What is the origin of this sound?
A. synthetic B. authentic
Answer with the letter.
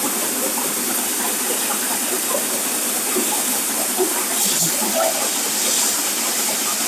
B